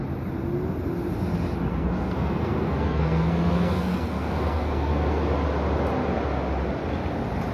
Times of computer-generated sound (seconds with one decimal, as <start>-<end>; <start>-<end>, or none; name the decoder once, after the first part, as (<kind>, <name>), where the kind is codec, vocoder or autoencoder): 1.7-5.2 (codec, SNAC)